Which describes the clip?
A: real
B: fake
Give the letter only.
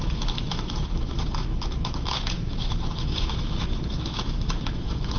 B